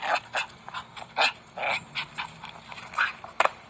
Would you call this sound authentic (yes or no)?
yes